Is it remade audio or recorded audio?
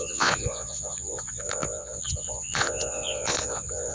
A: remade